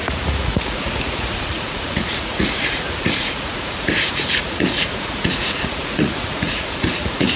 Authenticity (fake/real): fake